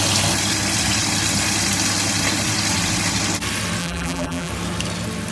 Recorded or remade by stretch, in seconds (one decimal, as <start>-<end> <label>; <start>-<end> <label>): 0.0-3.8 recorded; 3.8-4.5 remade; 4.5-5.3 recorded